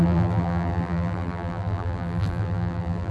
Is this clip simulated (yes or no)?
yes